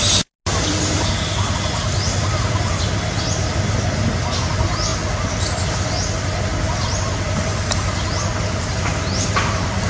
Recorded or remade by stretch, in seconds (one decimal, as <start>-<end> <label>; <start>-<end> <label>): 0.0-9.9 recorded